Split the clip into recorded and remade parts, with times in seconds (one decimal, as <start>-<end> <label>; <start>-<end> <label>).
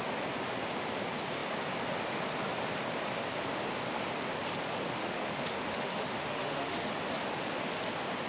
0.0-4.9 recorded; 4.9-6.9 remade; 6.9-8.3 recorded